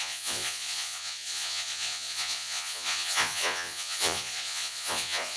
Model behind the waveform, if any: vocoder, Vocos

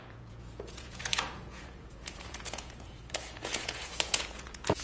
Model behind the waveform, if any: vocoder, Vocos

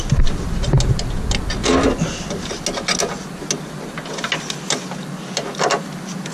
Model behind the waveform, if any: none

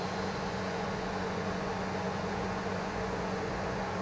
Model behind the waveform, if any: vocoder, Vocos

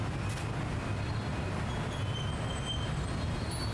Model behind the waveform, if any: none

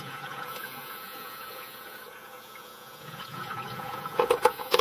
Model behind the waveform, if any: vocoder, Vocos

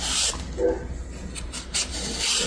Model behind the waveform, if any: none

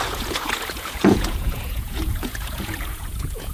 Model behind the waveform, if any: vocoder, Vocos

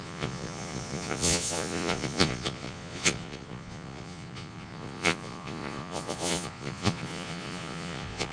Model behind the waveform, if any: vocoder, Vocos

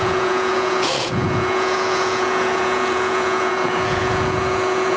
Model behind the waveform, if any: vocoder, Vocos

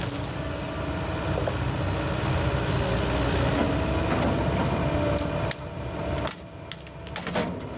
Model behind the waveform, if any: none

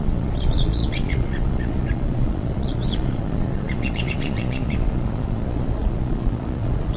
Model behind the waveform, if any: vocoder, Vocos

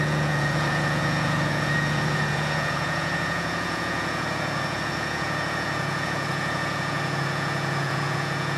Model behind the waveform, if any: vocoder, Vocos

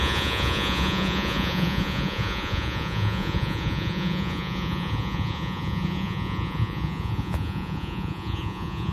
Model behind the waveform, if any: vocoder, Vocos